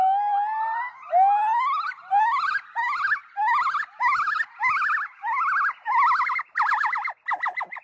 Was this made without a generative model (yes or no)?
yes